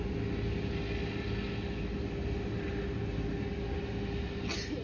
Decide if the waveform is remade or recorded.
recorded